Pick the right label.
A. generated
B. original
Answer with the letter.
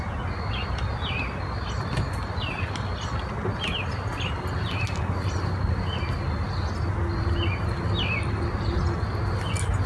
B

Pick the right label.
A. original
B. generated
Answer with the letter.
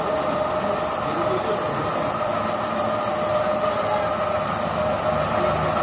A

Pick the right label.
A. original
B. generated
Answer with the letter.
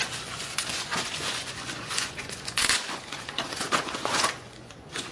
B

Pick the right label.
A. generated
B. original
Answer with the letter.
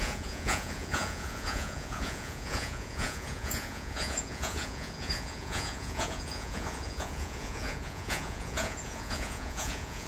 A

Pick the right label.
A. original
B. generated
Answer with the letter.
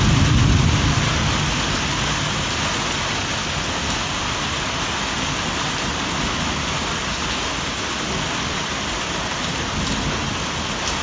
A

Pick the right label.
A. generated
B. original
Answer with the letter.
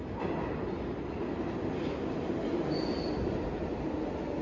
B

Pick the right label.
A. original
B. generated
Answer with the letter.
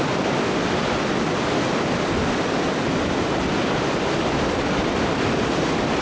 A